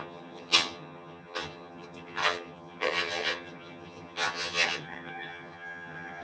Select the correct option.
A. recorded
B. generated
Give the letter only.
B